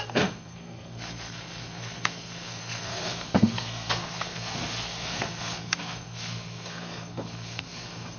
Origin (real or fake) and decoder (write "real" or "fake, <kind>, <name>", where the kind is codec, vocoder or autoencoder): fake, codec, SNAC